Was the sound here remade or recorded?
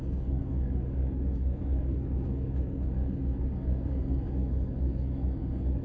remade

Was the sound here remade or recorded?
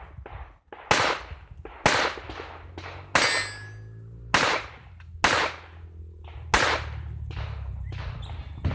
recorded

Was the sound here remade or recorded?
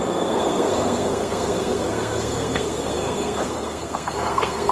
remade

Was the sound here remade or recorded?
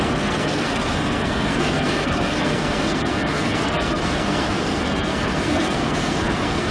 remade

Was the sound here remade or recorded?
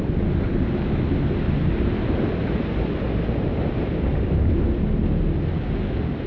recorded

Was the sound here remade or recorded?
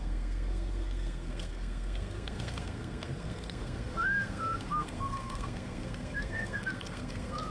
remade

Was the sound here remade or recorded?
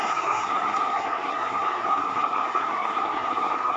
remade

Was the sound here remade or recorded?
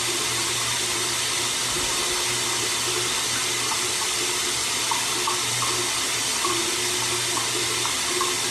recorded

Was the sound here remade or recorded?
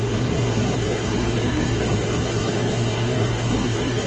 remade